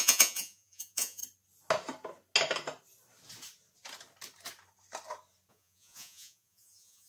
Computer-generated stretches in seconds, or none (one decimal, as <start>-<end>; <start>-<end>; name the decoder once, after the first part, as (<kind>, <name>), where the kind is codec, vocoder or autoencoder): 0.0-1.2 (vocoder, Vocos); 5.5-7.1